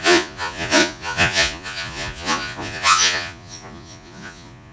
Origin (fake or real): fake